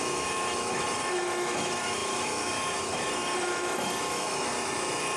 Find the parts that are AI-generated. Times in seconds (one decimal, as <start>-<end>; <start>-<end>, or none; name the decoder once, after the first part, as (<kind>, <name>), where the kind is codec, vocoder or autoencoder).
0.0-5.2 (autoencoder, DAC-VAE)